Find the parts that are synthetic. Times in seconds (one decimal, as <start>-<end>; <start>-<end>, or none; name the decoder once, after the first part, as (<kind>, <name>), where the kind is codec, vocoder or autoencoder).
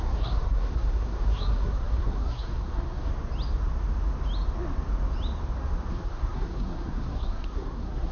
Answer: 0.0-3.1 (codec, SNAC); 5.9-8.1